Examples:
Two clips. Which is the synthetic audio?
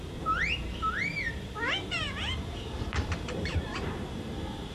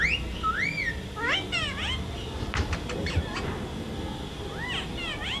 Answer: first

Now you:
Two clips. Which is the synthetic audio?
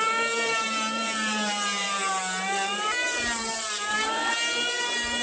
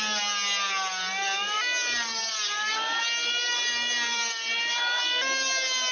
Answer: first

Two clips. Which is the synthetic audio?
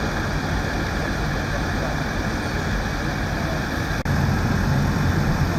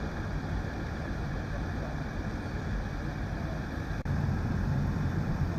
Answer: second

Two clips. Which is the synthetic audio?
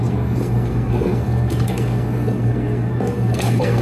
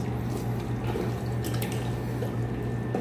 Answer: first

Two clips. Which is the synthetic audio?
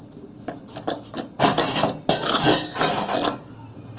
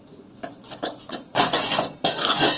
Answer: second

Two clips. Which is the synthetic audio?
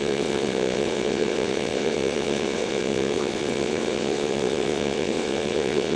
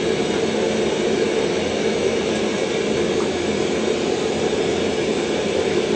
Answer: first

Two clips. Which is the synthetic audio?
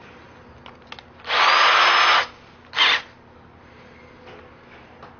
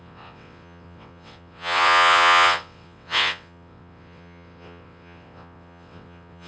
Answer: second